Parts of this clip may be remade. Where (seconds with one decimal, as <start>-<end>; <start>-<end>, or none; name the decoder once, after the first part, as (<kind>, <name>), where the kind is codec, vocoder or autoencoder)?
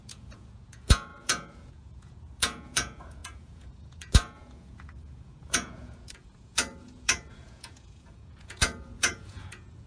0.0-9.9 (vocoder, Vocos)